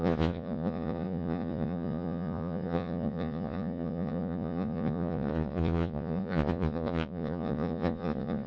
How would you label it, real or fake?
fake